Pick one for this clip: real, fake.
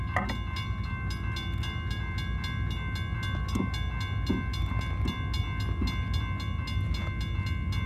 real